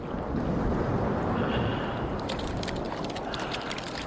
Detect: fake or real real